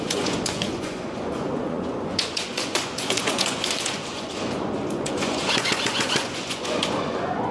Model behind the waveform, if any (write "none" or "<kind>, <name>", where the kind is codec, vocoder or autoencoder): vocoder, Vocos